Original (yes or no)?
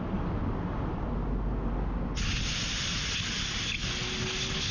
yes